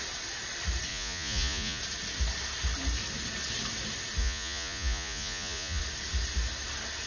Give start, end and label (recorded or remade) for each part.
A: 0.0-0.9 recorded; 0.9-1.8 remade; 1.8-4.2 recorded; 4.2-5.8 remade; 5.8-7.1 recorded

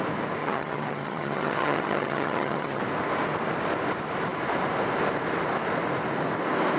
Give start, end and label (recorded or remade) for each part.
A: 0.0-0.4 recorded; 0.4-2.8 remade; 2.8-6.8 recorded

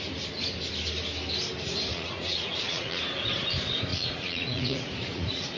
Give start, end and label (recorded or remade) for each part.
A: 0.0-1.9 recorded; 1.9-3.0 remade; 3.0-3.9 recorded; 3.9-5.6 remade

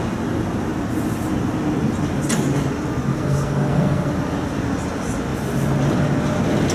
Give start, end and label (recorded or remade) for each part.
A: 0.0-3.1 recorded; 3.1-4.1 remade; 4.1-6.7 recorded

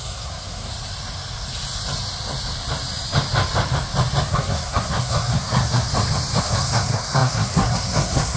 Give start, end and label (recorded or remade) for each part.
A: 0.0-0.7 remade; 0.7-4.3 recorded; 4.3-5.9 remade; 5.9-6.4 recorded; 6.4-8.4 remade

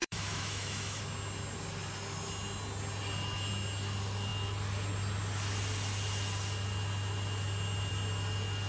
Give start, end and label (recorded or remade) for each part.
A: 0.0-1.0 remade; 1.0-8.7 recorded